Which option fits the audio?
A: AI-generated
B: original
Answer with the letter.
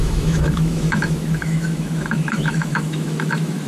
A